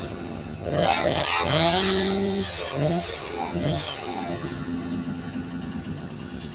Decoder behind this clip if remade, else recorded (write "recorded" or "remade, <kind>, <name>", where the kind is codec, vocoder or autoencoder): remade, vocoder, HiFi-GAN